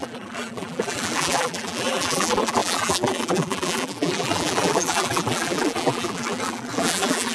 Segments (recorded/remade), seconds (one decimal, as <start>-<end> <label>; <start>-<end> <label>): 0.0-7.3 remade